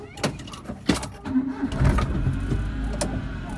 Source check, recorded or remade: recorded